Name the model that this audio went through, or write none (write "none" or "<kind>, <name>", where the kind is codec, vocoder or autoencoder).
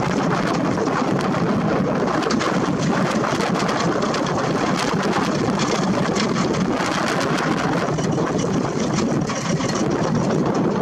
none